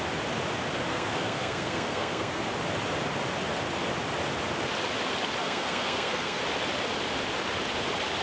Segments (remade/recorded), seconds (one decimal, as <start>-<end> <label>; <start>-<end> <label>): 0.0-0.9 recorded; 0.9-2.4 remade; 2.4-5.4 recorded; 5.4-6.4 remade; 6.4-8.2 recorded